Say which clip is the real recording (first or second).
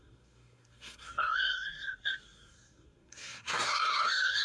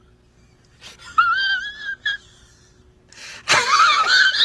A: second